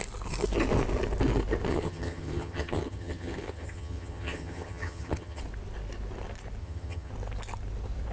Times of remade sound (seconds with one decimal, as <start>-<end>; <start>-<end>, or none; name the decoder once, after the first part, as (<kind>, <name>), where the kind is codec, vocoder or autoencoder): 1.7-5.4 (vocoder, HiFi-GAN); 6.6-7.1